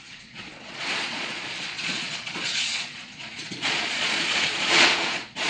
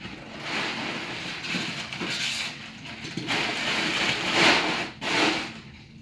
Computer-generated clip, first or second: first